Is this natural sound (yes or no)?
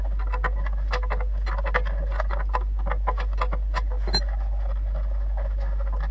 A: yes